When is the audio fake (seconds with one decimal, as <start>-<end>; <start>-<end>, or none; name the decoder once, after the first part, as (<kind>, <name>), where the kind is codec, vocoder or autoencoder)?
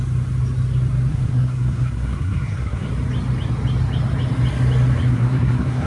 1.1-2.9 (codec, SNAC); 5.1-5.9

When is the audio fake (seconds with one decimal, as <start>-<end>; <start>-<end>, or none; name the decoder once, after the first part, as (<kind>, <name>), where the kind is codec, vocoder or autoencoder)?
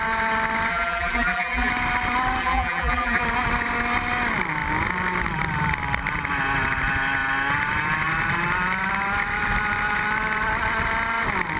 0.7-1.7 (vocoder, BigVGAN v2); 2.4-3.2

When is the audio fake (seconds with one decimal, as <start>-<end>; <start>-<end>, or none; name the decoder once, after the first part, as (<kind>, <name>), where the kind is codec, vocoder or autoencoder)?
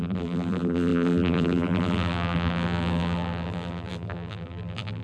0.0-5.0 (vocoder, BigVGAN v2)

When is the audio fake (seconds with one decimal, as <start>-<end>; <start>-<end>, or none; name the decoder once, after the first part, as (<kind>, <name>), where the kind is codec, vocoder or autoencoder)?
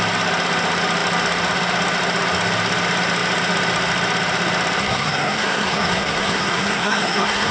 4.8-7.5 (codec, SNAC)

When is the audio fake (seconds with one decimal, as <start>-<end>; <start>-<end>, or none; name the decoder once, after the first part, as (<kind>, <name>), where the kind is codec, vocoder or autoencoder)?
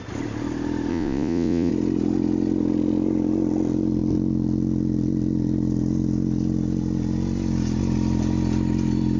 0.9-1.7 (vocoder, Vocos)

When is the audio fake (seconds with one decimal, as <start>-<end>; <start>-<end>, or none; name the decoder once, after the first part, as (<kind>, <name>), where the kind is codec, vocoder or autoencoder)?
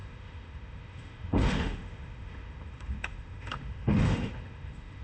0.0-5.0 (autoencoder, DAC-VAE)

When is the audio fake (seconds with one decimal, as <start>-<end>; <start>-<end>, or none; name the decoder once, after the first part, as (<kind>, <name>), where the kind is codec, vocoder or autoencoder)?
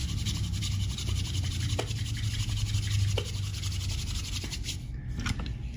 none